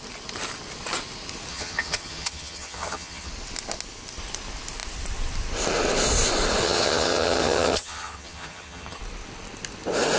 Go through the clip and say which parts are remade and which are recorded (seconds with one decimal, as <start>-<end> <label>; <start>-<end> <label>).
0.0-1.5 recorded; 1.5-3.3 remade; 3.3-6.6 recorded; 6.6-9.0 remade; 9.0-10.2 recorded